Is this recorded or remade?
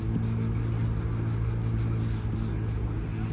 recorded